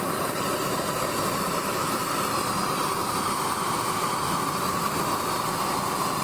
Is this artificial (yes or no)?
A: no